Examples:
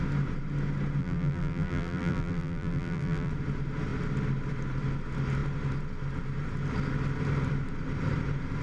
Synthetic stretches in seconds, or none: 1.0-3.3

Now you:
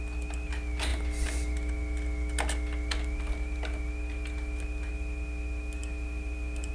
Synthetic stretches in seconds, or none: 5.8-6.7

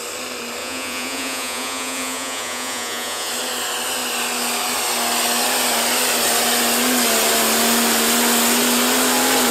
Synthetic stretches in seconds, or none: 0.6-3.3